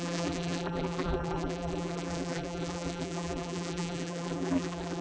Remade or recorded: remade